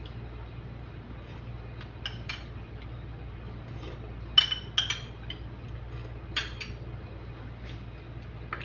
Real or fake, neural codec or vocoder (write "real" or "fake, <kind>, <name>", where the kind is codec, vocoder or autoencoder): real